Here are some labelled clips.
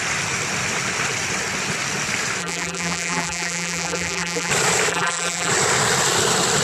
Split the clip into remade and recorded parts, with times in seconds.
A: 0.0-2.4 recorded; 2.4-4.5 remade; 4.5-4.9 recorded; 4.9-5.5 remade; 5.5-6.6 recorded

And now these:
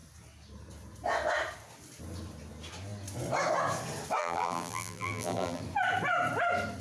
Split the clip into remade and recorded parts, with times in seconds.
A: 0.0-4.2 recorded; 4.2-5.6 remade; 5.6-6.8 recorded

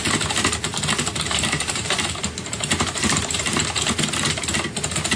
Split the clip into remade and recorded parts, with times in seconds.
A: 0.0-0.7 recorded; 0.7-3.8 remade; 3.8-5.2 recorded

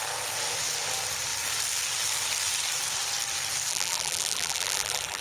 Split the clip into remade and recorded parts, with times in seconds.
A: 0.0-3.7 recorded; 3.7-5.2 remade

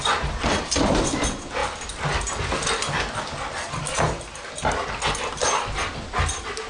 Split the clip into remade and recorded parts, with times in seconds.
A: 0.0-6.7 recorded

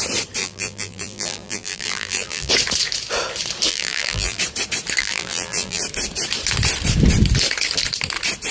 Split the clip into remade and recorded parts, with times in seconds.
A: 0.0-0.4 recorded; 0.4-2.5 remade; 2.5-3.7 recorded; 3.7-4.4 remade; 4.4-5.0 recorded; 5.0-5.8 remade; 5.8-8.5 recorded

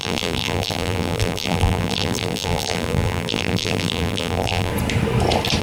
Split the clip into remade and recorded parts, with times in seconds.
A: 0.0-4.7 remade; 4.7-5.6 recorded